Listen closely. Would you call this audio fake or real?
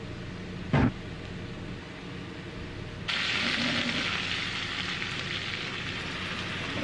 real